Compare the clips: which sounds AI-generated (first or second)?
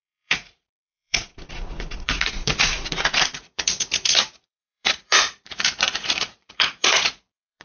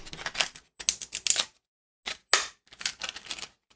first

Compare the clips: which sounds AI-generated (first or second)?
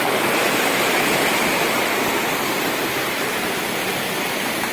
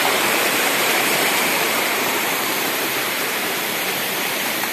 second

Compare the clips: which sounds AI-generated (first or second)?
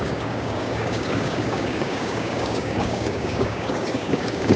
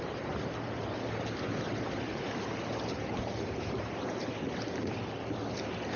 first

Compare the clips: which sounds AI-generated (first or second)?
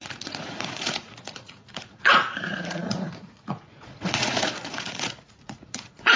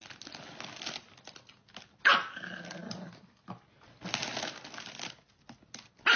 first